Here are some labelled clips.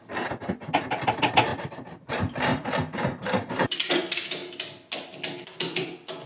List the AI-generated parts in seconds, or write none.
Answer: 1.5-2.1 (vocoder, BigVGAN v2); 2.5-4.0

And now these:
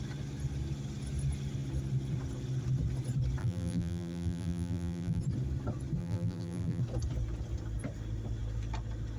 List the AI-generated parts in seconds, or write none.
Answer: 3.4-5.2 (vocoder, BigVGAN v2); 6.0-6.8